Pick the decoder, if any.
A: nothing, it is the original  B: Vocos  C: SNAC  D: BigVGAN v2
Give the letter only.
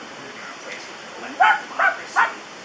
A